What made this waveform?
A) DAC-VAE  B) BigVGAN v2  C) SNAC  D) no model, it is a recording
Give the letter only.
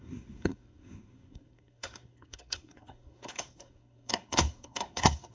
C